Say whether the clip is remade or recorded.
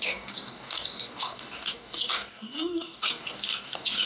remade